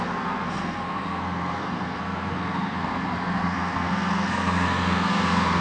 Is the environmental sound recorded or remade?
remade